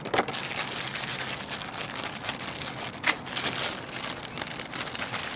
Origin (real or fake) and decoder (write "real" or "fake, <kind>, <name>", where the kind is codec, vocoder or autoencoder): real